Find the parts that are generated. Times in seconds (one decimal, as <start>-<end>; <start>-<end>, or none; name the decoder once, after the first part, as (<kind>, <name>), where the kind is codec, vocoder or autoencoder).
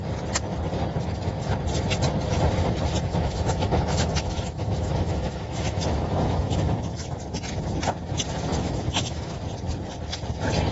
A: 3.1-7.2 (autoencoder, DAC-VAE); 8.5-9.4